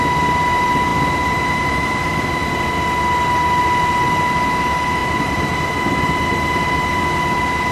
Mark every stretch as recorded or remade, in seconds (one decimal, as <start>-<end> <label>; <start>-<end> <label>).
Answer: 0.0-5.0 recorded; 5.0-5.5 remade; 5.5-7.7 recorded